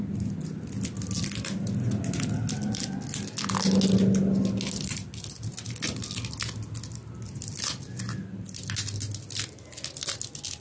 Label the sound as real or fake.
real